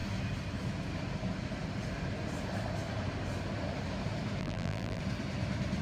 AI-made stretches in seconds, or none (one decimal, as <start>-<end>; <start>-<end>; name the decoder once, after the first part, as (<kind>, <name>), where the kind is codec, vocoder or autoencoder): 4.4-5.0 (vocoder, BigVGAN v2)

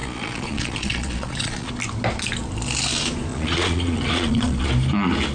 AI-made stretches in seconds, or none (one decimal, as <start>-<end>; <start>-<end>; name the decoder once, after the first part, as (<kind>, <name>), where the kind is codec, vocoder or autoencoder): 0.0-1.7 (vocoder, Vocos); 3.3-4.7

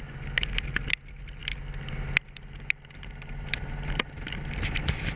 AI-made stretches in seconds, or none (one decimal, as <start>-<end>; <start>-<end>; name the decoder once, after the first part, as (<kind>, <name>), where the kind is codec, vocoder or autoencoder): none

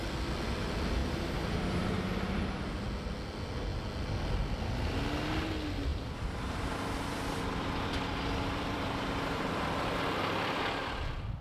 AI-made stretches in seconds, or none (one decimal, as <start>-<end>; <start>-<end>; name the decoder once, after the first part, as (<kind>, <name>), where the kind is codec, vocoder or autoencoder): 1.0-1.9 (vocoder, BigVGAN v2); 5.9-11.4

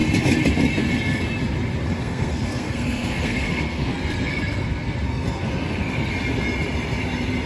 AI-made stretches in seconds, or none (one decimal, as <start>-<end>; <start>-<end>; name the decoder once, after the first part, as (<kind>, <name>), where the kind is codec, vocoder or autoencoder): 2.0-6.1 (codec, SNAC)

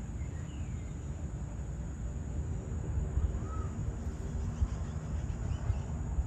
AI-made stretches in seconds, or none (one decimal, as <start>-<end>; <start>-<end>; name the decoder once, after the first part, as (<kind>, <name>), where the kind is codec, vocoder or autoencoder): none

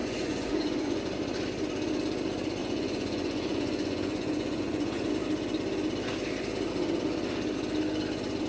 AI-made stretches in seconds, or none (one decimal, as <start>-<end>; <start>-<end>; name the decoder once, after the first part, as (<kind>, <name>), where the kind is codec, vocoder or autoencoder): 0.0-1.0 (vocoder, Vocos); 2.6-5.1